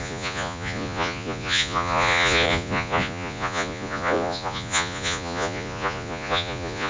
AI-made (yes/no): yes